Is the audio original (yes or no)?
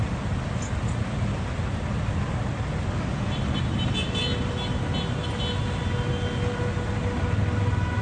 yes